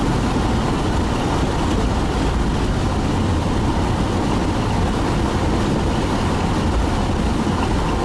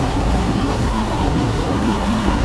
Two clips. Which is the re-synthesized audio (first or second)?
second